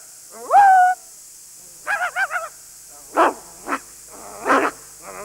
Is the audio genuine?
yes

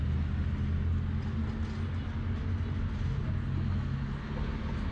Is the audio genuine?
yes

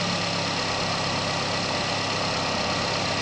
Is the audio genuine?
yes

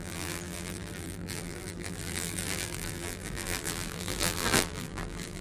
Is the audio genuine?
no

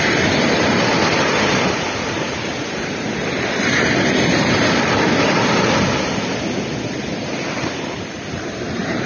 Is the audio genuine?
no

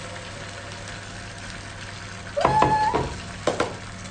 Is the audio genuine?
yes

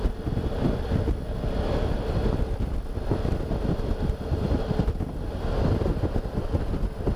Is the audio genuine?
yes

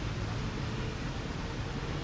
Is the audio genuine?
yes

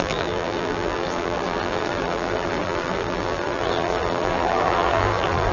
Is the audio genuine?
no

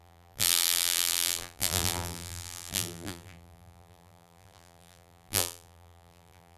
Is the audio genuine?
no